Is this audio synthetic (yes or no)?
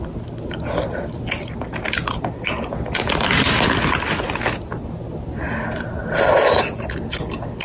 no